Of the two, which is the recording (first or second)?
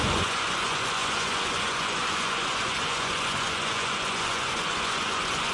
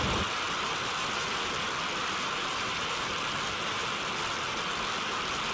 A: second